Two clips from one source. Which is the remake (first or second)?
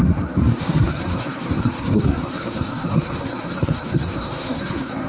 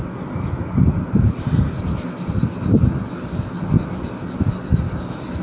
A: first